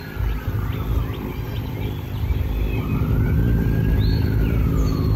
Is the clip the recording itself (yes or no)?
yes